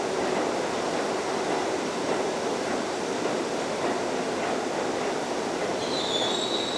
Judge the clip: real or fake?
real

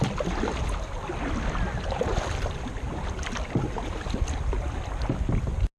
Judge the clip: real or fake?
real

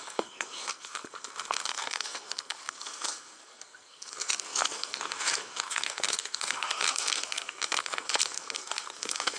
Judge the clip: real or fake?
fake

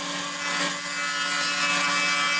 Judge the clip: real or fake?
real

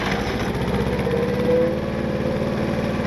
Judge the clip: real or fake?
real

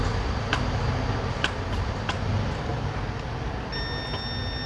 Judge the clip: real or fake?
real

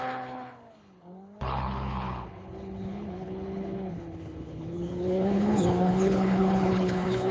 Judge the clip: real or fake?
fake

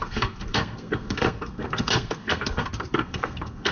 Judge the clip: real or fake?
fake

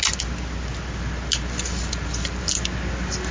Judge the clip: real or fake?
real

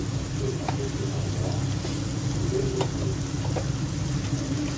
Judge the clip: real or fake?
real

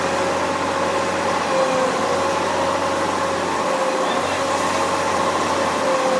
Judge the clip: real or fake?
real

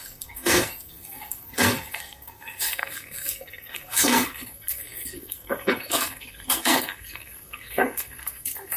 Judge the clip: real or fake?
fake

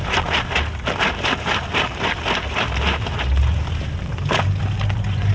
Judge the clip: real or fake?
real